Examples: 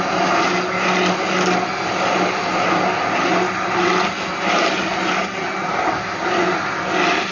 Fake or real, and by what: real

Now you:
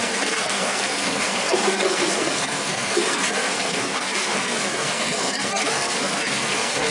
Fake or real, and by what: fake, codec, SNAC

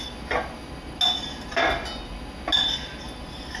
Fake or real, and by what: real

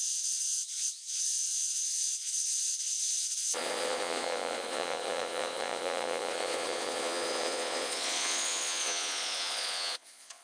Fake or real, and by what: fake, vocoder, Vocos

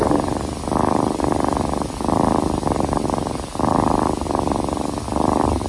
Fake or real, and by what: real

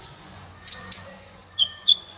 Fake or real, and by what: fake, vocoder, Vocos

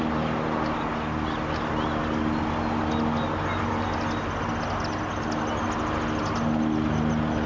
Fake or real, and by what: real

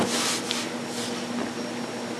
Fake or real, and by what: real